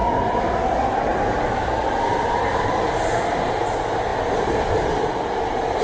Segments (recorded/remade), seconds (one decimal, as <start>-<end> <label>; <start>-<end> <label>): 0.0-5.8 recorded